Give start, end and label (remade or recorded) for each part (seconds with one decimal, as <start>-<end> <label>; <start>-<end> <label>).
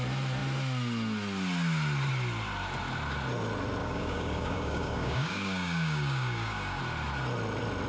0.0-3.8 recorded; 3.8-6.8 remade; 6.8-7.9 recorded